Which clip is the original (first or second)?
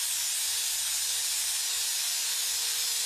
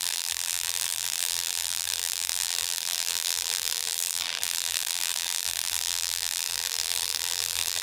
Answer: first